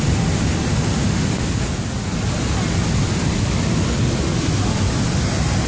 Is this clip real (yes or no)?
yes